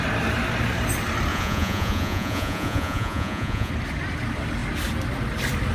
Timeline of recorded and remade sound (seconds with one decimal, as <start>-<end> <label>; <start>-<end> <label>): 0.0-1.3 recorded; 1.3-3.7 remade; 3.7-5.7 recorded